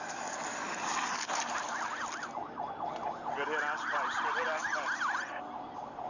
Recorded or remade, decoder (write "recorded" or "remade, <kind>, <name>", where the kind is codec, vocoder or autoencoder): recorded